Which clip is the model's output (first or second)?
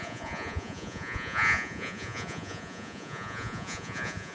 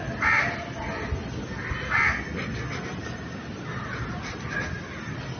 first